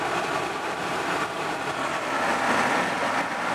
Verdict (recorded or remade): recorded